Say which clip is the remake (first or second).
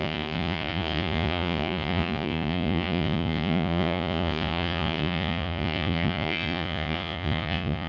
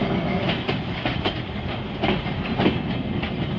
first